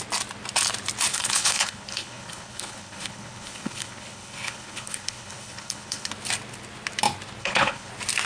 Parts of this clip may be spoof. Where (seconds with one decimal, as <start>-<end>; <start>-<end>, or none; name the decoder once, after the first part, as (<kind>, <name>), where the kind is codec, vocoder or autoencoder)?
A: 1.1-6.1 (codec, HILCodec); 7.4-7.9